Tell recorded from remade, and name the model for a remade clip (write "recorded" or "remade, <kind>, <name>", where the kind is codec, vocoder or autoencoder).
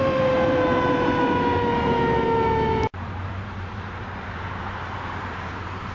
remade, vocoder, BigVGAN v2